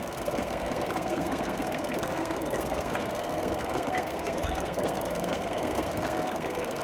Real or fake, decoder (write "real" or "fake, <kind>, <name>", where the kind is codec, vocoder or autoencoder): fake, codec, SNAC